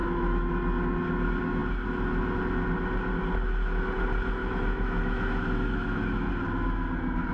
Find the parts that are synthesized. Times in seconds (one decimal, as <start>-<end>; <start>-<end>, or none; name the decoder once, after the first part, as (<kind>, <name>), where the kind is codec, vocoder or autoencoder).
0.0-0.5 (autoencoder, DAC-VAE); 4.4-6.3